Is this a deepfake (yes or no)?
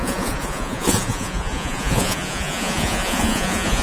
yes